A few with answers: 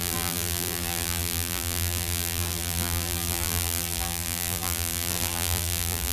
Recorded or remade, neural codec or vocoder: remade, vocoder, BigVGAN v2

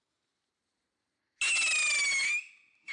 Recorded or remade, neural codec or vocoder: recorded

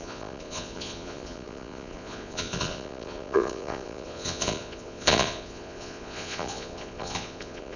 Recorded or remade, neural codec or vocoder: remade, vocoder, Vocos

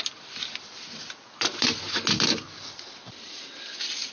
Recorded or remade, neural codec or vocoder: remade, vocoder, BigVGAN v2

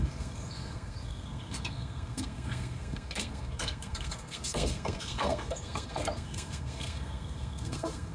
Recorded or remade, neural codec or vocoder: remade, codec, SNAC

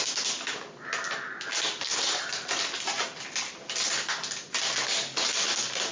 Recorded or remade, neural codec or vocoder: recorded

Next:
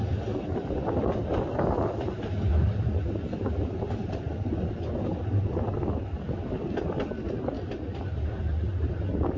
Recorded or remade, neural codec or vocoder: recorded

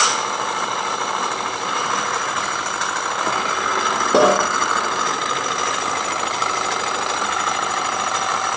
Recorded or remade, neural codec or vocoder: recorded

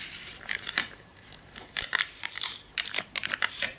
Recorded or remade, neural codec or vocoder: remade, vocoder, BigVGAN v2